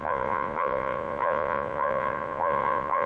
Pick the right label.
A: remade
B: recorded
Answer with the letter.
A